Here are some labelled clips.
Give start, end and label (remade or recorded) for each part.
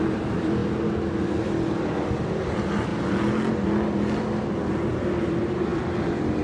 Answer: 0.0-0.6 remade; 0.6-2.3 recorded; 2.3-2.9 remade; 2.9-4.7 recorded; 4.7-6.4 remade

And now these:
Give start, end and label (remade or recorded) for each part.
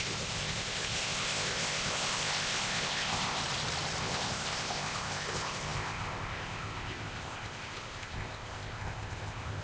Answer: 0.0-3.4 remade; 3.4-4.0 recorded; 4.0-9.6 remade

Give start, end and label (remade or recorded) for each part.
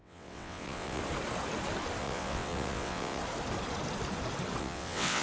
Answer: 0.0-1.0 remade; 1.0-2.0 recorded; 2.0-3.2 remade; 3.2-4.6 recorded; 4.6-5.2 remade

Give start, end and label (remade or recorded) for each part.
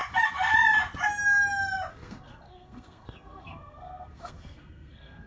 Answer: 0.0-1.9 recorded; 1.9-5.3 remade